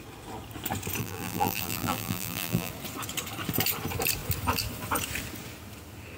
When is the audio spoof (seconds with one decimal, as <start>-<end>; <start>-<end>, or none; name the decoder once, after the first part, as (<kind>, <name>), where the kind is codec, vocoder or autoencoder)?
1.0-2.7 (vocoder, BigVGAN v2)